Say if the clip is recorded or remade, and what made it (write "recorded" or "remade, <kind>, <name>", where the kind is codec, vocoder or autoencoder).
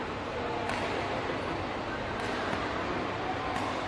recorded